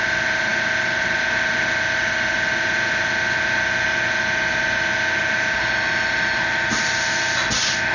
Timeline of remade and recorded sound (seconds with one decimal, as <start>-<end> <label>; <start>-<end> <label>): 0.0-7.9 recorded